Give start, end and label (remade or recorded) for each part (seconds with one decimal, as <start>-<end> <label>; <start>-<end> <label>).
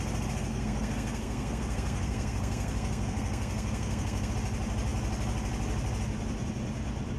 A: 0.0-0.5 recorded; 0.5-4.3 remade; 4.3-7.2 recorded